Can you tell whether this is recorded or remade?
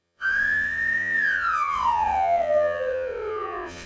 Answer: remade